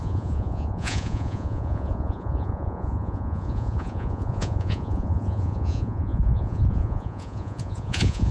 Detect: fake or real fake